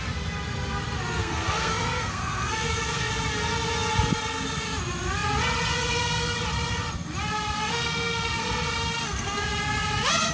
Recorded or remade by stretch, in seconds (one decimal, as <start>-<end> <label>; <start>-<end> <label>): 0.0-1.2 recorded; 1.2-3.1 remade; 3.1-7.7 recorded; 7.7-8.4 remade; 8.4-9.0 recorded; 9.0-9.5 remade; 9.5-10.3 recorded

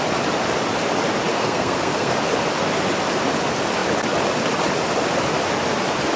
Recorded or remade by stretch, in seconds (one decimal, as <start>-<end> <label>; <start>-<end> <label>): 0.0-1.3 recorded; 1.3-2.1 remade; 2.1-6.2 recorded

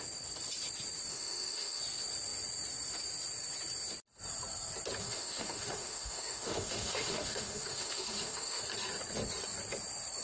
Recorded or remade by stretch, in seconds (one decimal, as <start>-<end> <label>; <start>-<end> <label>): 0.0-1.1 recorded; 1.1-1.8 remade; 1.8-5.0 recorded; 5.0-8.6 remade; 8.6-10.2 recorded